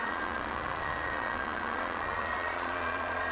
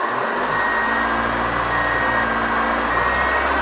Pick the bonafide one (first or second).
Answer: second